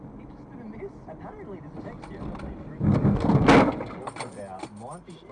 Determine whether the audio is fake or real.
real